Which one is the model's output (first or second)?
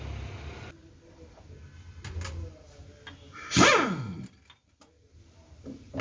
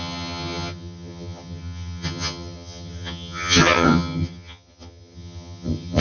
second